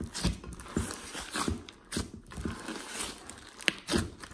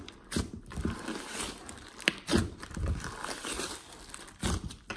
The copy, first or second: second